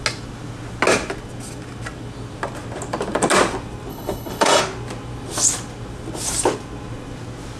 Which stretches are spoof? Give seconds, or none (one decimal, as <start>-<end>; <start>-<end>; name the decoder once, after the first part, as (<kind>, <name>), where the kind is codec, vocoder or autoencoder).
3.9-4.6 (codec, HILCodec)